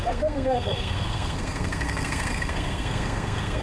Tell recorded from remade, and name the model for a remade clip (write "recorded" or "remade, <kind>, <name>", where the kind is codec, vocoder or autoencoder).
remade, codec, SNAC